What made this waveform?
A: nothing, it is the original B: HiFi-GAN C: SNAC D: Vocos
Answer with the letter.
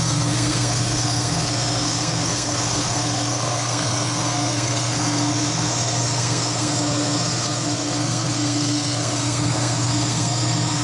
C